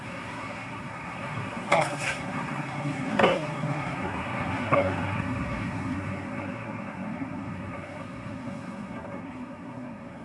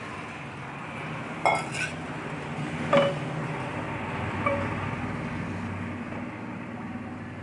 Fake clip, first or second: first